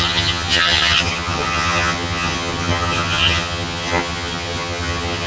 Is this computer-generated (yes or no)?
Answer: yes